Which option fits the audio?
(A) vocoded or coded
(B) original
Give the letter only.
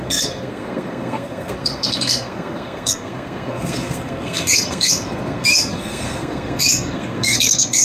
A